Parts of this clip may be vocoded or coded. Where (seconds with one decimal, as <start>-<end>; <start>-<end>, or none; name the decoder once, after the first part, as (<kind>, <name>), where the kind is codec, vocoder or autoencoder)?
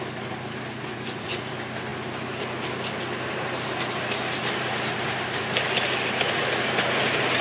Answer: 0.9-1.4 (vocoder, Vocos)